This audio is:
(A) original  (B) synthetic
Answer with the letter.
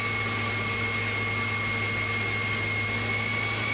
A